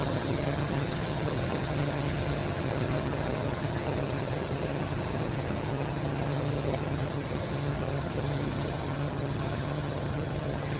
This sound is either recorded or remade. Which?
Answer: remade